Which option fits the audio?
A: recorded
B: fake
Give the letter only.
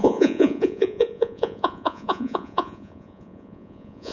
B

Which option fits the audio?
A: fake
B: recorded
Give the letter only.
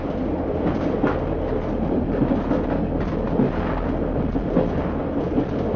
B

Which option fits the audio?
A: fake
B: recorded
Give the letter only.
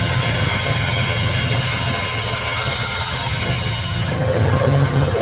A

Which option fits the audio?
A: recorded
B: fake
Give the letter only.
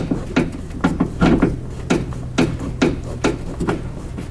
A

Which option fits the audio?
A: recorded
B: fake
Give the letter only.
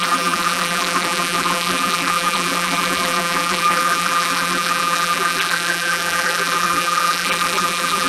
B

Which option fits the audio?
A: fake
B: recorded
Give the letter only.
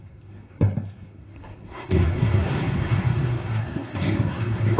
A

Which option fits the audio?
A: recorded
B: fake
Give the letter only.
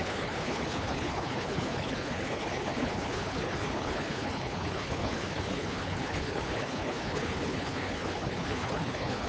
B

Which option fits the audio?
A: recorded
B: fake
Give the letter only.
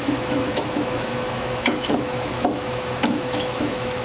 B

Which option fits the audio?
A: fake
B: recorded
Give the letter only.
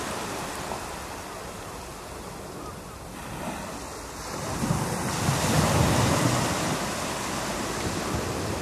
B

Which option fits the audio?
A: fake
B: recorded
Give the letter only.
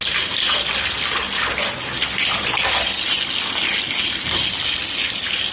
B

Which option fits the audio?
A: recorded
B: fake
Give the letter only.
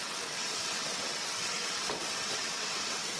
B